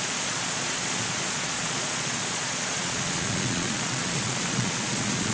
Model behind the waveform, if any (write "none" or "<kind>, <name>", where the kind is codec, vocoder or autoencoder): vocoder, Vocos